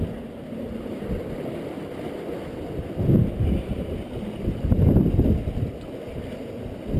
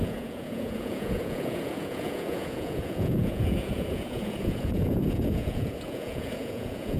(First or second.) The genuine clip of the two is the first